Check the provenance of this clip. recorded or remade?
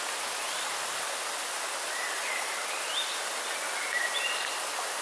recorded